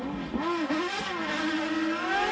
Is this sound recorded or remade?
recorded